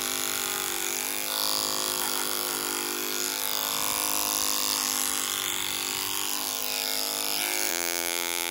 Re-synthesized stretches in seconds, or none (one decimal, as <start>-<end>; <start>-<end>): 7.7-8.5